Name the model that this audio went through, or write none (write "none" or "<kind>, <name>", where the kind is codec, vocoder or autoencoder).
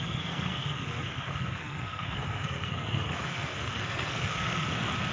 codec, SNAC